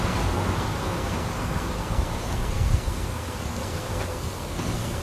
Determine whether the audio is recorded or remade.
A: remade